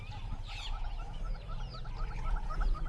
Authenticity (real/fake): real